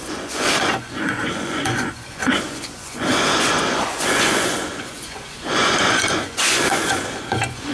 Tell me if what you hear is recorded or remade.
remade